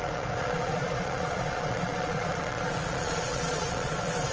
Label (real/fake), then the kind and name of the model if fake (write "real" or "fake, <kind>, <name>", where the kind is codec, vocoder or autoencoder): fake, vocoder, Vocos